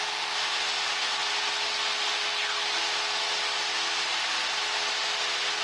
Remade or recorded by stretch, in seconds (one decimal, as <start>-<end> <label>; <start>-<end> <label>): 0.0-5.6 recorded